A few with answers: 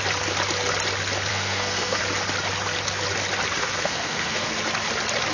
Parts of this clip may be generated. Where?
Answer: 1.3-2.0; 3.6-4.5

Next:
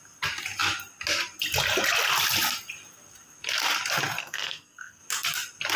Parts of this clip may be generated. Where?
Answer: 4.2-5.0